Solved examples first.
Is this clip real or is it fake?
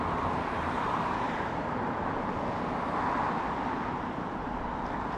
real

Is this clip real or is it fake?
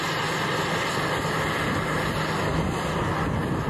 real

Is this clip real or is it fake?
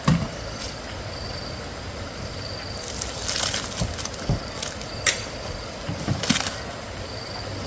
real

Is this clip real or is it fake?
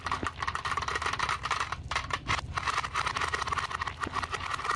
real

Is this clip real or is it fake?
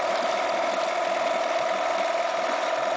real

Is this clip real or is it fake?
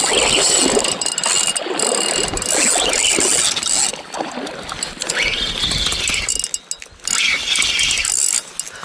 real